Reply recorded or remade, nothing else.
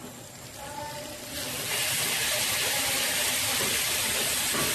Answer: recorded